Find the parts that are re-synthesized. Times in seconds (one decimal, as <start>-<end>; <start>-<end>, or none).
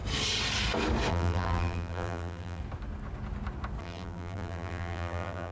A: 1.1-2.6; 3.8-5.5